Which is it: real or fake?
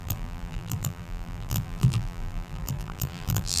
fake